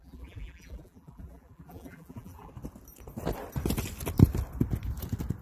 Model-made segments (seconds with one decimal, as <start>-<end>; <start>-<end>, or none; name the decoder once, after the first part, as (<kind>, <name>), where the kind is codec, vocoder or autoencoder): 0.0-2.5 (vocoder, BigVGAN v2)